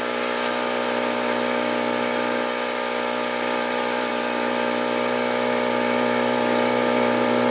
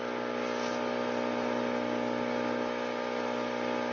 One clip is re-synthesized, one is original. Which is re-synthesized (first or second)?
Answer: first